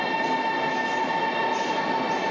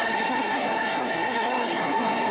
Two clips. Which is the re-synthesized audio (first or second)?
second